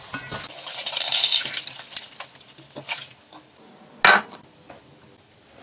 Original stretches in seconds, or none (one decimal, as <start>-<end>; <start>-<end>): 0.0-5.6